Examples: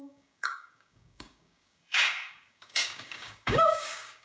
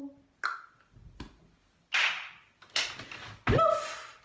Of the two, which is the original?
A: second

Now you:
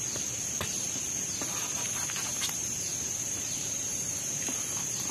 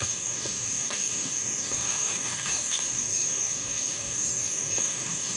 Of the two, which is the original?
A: first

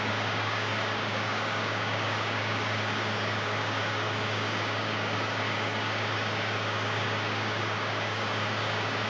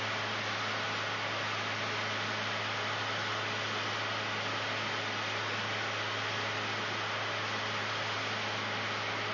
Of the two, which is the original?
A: second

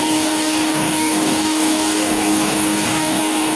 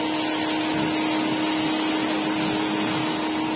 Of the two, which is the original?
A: second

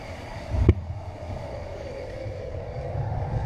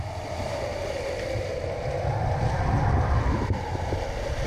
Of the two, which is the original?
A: second